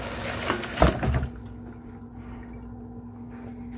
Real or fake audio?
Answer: real